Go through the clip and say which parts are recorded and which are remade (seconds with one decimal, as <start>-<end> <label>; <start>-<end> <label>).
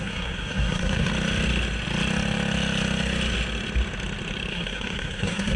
0.0-1.1 remade; 1.1-4.5 recorded; 4.5-5.6 remade